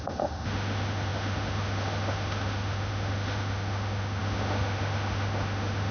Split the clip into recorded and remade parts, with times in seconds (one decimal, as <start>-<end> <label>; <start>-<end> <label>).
0.0-5.9 remade